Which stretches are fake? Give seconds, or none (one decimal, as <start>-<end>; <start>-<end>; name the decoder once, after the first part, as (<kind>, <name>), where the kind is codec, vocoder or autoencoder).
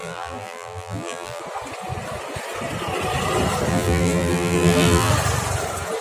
0.0-1.4 (vocoder, BigVGAN v2); 3.7-5.1